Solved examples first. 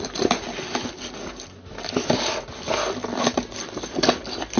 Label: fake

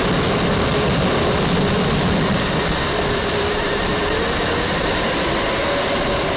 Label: fake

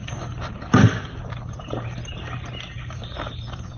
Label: fake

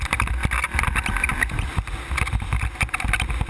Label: real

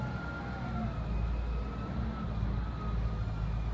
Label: real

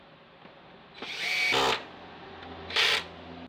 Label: real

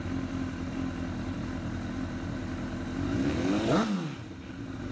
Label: real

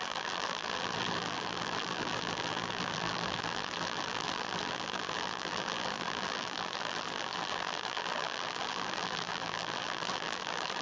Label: fake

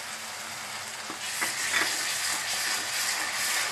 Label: real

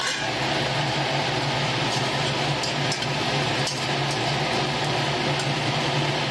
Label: real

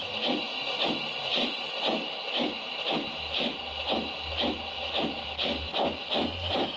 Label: real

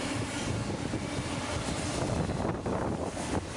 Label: real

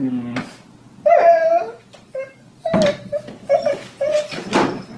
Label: real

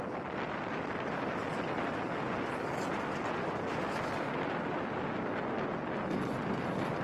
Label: real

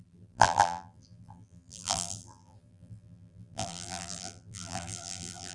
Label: fake